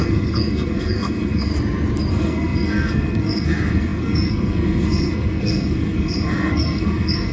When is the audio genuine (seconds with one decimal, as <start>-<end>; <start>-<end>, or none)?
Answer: 1.5-2.1

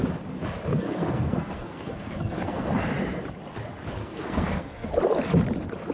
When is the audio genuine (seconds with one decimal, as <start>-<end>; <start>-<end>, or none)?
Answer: 0.0-0.7; 2.7-4.0; 4.9-5.9

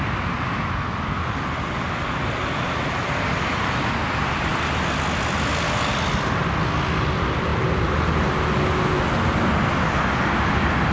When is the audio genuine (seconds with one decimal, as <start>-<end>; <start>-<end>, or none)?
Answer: 0.0-10.9

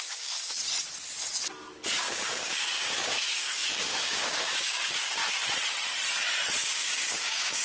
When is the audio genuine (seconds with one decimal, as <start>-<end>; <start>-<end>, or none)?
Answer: 0.6-2.0; 5.2-6.6

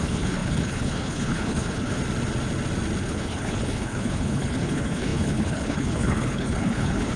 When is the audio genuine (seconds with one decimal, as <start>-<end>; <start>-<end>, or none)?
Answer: 2.0-3.0